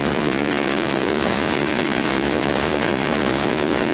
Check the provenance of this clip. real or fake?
fake